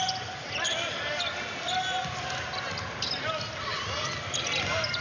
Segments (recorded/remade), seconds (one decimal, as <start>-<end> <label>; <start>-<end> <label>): 0.0-5.0 recorded